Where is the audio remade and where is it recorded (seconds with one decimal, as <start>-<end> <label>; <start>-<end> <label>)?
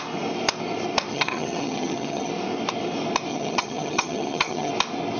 0.0-1.1 recorded; 1.1-2.3 remade; 2.3-3.3 recorded; 3.3-4.7 remade; 4.7-5.2 recorded